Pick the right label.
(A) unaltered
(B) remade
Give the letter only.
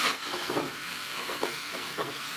B